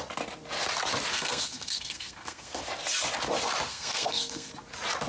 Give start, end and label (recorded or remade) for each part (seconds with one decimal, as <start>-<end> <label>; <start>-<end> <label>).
0.0-1.1 recorded; 1.1-2.6 remade; 2.6-3.7 recorded; 3.7-4.5 remade; 4.5-5.1 recorded

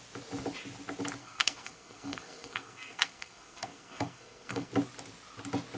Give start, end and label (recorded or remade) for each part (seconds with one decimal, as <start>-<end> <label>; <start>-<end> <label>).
0.0-1.2 recorded; 1.2-4.7 remade; 4.7-5.8 recorded

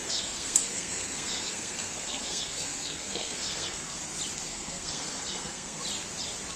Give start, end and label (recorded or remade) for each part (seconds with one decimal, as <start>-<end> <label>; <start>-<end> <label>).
0.0-4.0 remade; 4.0-4.5 recorded; 4.5-5.8 remade; 5.8-6.6 recorded